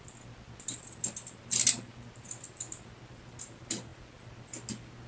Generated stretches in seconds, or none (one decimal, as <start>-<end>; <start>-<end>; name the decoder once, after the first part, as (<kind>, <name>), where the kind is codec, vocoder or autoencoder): none